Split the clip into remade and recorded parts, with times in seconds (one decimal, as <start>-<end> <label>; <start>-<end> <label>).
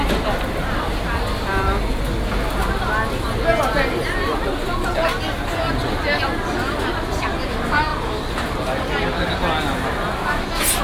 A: 0.0-10.8 recorded